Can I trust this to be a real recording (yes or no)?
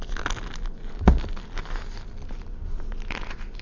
yes